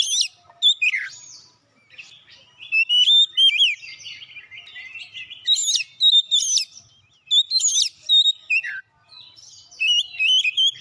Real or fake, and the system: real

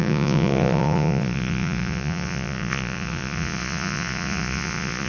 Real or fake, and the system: fake, vocoder, Vocos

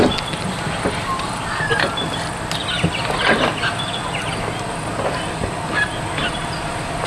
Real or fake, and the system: real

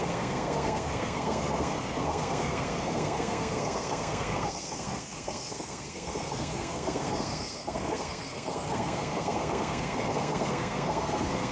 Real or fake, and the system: fake, codec, SNAC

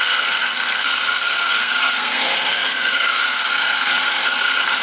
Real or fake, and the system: fake, codec, SNAC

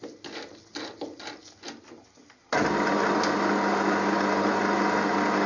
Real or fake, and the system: real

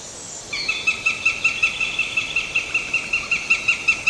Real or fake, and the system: real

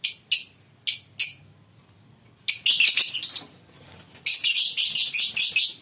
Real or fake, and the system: real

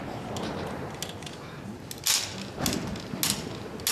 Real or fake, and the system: real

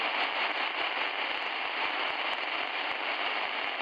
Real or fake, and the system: real